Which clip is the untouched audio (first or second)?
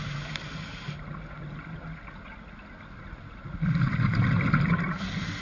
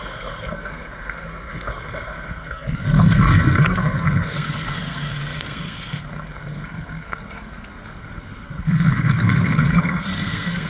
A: first